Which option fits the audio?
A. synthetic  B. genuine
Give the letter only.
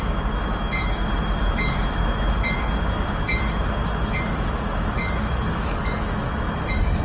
A